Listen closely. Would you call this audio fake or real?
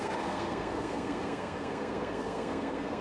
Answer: fake